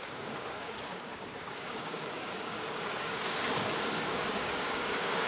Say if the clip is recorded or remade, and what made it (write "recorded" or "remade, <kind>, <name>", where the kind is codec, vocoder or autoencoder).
remade, codec, DAC